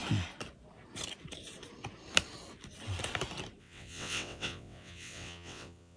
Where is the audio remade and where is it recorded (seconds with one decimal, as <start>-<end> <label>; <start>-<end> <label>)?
0.0-3.6 recorded; 3.6-6.0 remade